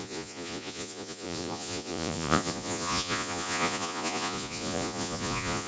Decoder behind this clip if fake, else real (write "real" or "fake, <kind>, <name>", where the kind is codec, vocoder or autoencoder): fake, vocoder, Vocos